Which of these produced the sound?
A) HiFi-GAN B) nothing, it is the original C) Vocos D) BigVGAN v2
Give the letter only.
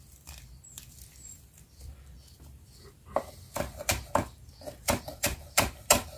D